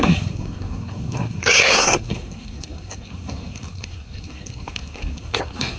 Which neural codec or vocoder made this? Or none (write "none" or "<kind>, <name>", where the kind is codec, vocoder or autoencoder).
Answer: codec, SNAC